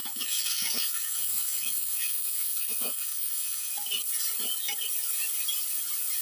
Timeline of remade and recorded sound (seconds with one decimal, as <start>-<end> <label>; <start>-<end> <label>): 0.0-3.7 remade; 3.7-6.2 recorded